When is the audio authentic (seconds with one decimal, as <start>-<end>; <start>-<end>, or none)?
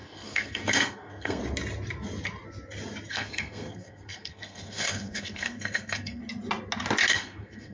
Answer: 1.4-3.1; 6.2-7.1